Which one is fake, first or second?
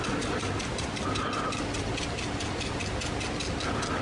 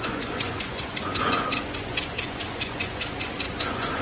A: second